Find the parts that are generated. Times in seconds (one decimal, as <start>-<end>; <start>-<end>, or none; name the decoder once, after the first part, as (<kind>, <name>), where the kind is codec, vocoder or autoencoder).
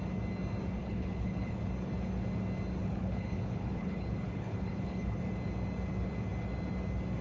0.8-1.6 (codec, HILCodec); 2.8-5.2